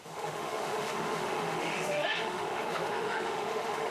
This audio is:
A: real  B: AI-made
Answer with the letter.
B